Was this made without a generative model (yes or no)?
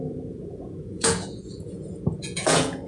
no